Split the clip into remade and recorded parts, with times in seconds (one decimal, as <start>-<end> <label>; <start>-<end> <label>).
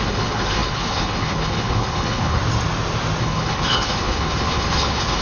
0.0-2.4 remade; 2.4-3.2 recorded; 3.2-5.2 remade